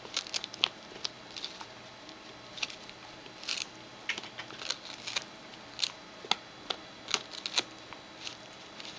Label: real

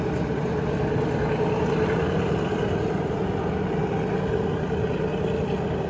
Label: real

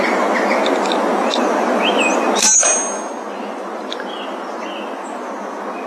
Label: real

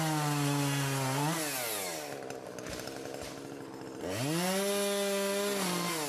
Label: real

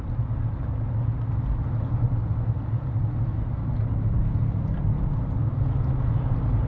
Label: real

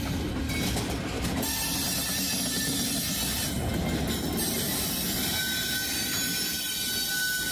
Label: real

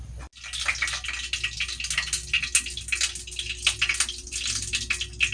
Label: real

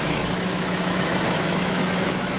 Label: fake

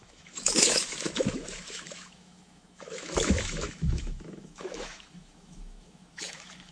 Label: fake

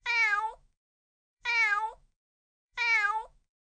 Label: fake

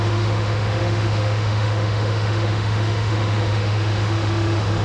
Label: fake